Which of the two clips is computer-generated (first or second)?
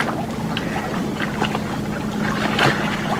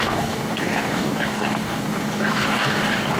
second